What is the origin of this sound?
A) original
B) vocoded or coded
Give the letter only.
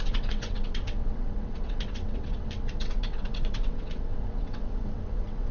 B